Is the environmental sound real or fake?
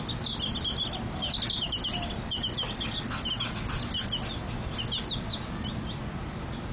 real